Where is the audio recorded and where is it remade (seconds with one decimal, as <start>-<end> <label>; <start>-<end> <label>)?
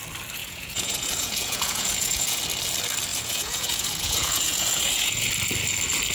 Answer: 0.0-0.4 recorded; 0.4-2.4 remade; 2.4-3.1 recorded; 3.1-5.3 remade; 5.3-6.1 recorded